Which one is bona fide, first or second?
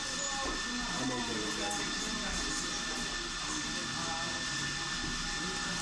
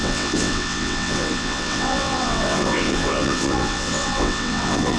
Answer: first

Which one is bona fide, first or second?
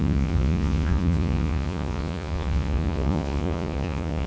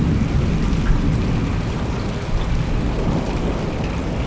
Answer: second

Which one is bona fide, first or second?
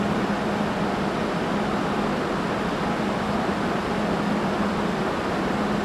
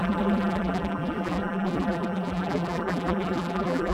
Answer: first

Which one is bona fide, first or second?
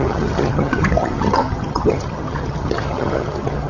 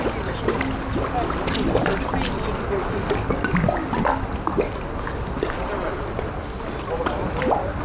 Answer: second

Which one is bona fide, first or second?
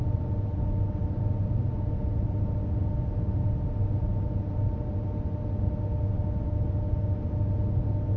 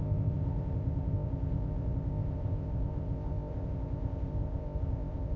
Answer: first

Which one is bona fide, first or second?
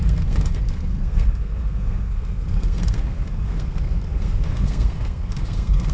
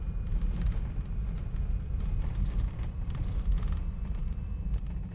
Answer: second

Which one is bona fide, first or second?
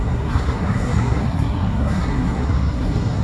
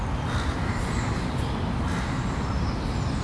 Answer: second